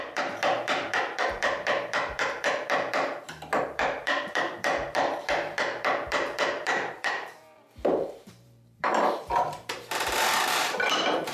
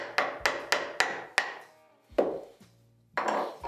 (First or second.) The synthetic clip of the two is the first